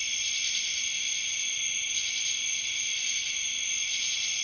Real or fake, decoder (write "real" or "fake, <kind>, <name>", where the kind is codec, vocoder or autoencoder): fake, vocoder, BigVGAN v2